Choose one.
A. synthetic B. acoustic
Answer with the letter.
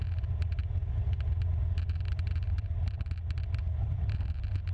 B